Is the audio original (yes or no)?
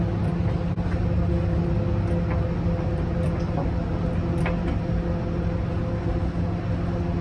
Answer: yes